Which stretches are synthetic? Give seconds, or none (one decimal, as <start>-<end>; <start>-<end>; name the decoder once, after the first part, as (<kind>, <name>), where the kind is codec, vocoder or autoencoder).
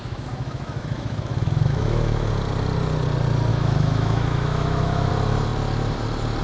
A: 0.0-2.3 (autoencoder, DAC-VAE); 3.5-5.1